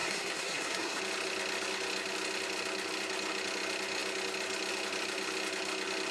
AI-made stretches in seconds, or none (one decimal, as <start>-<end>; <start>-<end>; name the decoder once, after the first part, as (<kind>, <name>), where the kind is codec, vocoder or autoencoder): 0.0-1.0 (codec, SNAC)